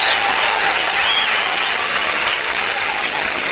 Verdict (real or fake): fake